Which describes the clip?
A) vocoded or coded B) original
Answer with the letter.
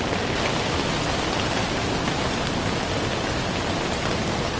B